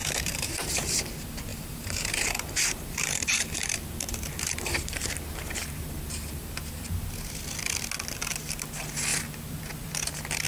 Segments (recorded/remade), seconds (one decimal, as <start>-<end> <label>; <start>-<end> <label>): 0.0-1.1 remade; 1.1-1.5 recorded; 1.5-6.5 remade; 6.5-10.5 recorded